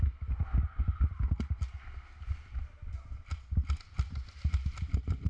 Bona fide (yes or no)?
yes